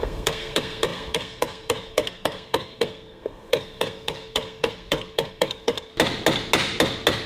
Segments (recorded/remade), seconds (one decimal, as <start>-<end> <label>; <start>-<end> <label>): 0.0-5.9 remade; 5.9-7.3 recorded